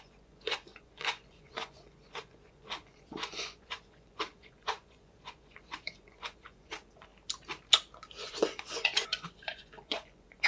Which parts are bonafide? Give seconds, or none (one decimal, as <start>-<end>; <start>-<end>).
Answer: 7.1-8.2